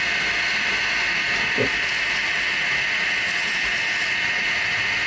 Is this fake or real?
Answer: real